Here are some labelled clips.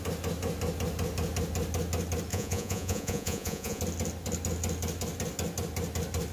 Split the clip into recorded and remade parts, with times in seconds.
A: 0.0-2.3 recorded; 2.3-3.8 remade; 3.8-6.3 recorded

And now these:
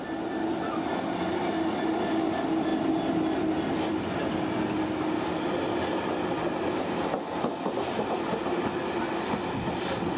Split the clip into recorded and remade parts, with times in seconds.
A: 0.0-10.2 recorded

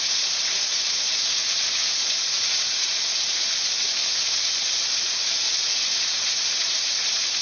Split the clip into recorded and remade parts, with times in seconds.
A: 0.0-4.0 remade; 4.0-5.0 recorded; 5.0-7.4 remade

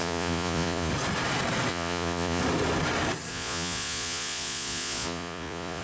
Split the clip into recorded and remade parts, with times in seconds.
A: 0.0-0.9 remade; 0.9-1.7 recorded; 1.7-2.4 remade; 2.4-3.3 recorded; 3.3-5.8 remade

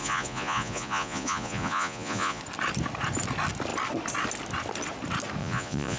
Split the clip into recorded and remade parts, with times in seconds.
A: 0.0-2.4 remade; 2.4-5.4 recorded; 5.4-6.0 remade

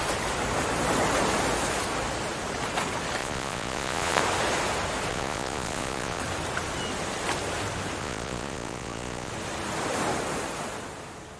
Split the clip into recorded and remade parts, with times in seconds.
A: 0.0-3.2 recorded; 3.2-4.2 remade; 4.2-5.1 recorded; 5.1-6.2 remade; 6.2-8.0 recorded; 8.0-9.3 remade; 9.3-11.4 recorded

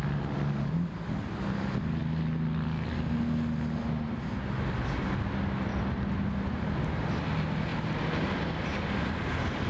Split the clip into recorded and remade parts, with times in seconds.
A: 0.0-9.7 recorded

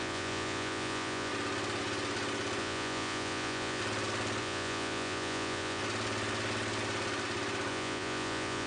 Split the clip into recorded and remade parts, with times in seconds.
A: 0.0-1.3 remade; 1.3-2.6 recorded; 2.6-3.8 remade; 3.8-4.4 recorded; 4.4-5.8 remade; 5.8-7.7 recorded; 7.7-8.7 remade